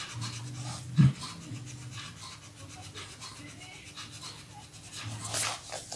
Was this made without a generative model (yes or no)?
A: yes